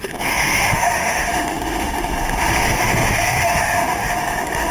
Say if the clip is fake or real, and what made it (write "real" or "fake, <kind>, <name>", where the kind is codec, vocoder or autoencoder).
fake, autoencoder, DAC-VAE